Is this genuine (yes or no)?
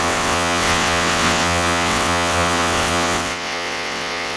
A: no